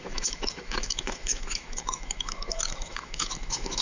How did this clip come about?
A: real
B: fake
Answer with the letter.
B